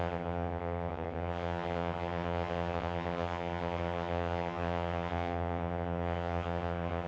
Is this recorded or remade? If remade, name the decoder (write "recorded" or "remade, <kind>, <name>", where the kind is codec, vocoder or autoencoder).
remade, vocoder, HiFi-GAN